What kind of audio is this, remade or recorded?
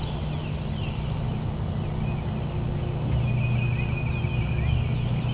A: recorded